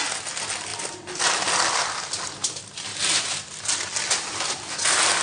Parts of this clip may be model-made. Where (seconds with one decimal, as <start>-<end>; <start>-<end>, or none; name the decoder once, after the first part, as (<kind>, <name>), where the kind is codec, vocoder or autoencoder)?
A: none